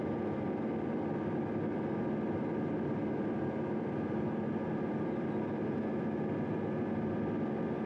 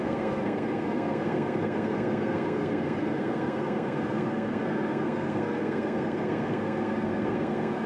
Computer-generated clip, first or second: second